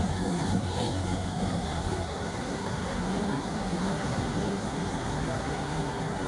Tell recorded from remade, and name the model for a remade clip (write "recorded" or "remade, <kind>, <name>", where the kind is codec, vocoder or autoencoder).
remade, codec, SNAC